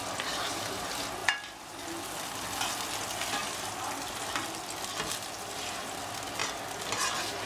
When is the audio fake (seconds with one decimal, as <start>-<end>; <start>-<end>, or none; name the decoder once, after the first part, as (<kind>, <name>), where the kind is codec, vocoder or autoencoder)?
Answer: none